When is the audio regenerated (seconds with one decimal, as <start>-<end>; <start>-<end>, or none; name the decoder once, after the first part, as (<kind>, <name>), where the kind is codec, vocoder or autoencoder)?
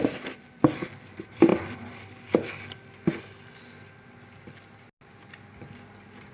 none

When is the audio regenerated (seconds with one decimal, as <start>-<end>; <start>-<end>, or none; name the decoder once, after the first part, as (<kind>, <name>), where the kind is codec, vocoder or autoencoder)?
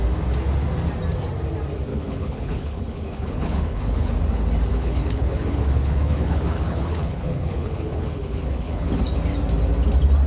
1.9-4.2 (codec, HILCodec); 4.7-8.9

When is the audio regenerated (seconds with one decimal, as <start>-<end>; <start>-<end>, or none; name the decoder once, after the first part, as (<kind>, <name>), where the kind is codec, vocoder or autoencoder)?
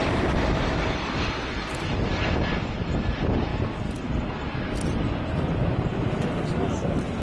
0.0-2.1 (vocoder, BigVGAN v2); 2.6-3.5; 4.1-7.2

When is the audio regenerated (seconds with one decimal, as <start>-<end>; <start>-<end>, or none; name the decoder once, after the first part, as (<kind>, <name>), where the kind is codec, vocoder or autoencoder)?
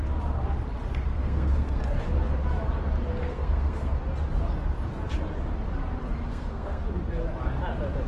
1.1-1.8 (codec, SNAC); 3.2-3.9; 6.3-6.8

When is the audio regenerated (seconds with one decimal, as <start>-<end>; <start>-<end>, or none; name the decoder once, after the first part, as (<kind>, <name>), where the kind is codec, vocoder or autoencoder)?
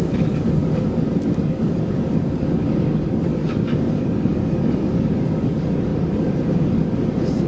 0.0-7.5 (codec, DAC)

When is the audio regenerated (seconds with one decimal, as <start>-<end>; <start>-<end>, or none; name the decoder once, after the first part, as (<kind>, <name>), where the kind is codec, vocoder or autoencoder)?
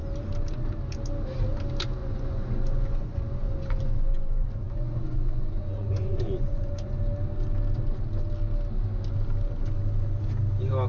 2.0-7.0 (vocoder, Vocos)